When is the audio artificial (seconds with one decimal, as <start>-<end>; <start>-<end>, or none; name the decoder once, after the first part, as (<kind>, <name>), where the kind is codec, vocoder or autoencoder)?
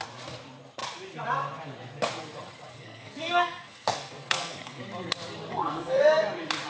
2.7-4.8 (codec, SNAC); 5.5-6.0